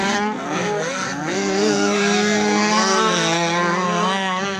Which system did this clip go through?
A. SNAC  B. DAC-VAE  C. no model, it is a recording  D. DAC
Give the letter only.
A